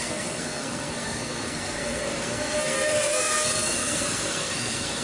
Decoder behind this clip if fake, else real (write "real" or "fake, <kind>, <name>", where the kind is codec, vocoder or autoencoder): fake, codec, SNAC